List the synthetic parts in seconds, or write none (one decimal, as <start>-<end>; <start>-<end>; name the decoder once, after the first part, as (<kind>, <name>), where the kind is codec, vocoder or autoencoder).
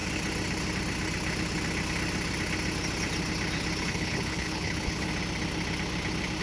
3.8-5.1 (codec, HILCodec)